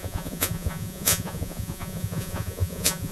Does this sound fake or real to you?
fake